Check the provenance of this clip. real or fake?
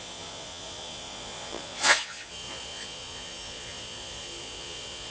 fake